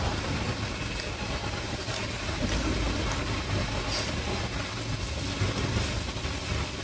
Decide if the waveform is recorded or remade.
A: recorded